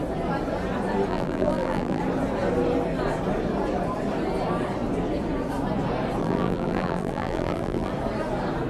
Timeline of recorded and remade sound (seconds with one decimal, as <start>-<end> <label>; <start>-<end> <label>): 0.0-1.1 recorded; 1.1-2.0 remade; 2.0-6.2 recorded; 6.2-7.9 remade; 7.9-8.7 recorded